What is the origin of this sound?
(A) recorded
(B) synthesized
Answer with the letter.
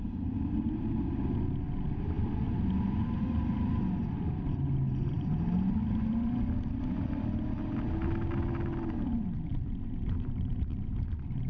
A